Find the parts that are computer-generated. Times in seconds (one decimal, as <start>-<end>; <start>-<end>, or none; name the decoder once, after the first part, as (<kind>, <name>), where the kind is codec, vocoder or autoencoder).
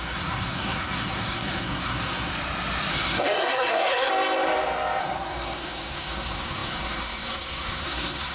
0.0-2.3 (codec, SNAC); 2.9-4.1; 5.0-8.3